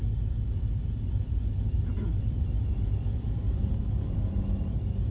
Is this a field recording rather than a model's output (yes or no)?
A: no